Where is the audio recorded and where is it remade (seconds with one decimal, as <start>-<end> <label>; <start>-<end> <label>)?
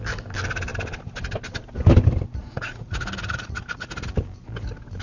0.0-2.4 recorded; 2.4-3.6 remade; 3.6-5.0 recorded